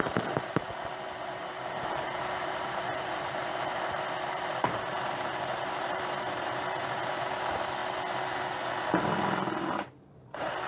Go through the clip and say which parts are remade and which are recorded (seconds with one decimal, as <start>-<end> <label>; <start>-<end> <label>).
0.0-7.8 remade; 7.8-10.1 recorded; 10.1-10.7 remade